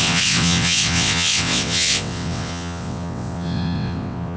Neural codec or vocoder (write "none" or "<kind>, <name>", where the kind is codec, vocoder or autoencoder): vocoder, WaveNeXt